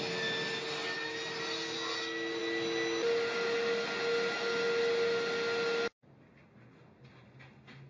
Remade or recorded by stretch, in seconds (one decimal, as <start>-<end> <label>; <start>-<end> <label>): 0.0-7.9 recorded